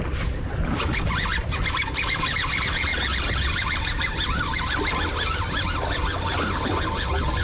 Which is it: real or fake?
real